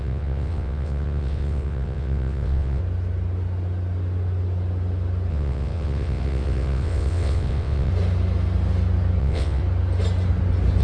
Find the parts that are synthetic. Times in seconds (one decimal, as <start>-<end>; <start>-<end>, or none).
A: 0.0-2.8; 5.3-7.9; 9.2-9.6